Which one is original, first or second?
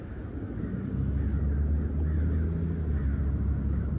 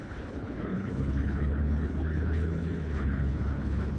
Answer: first